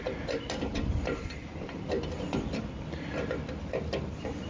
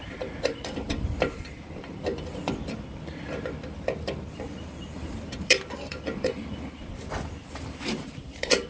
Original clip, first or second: first